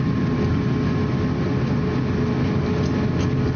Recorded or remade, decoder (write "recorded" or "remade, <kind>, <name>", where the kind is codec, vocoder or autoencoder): recorded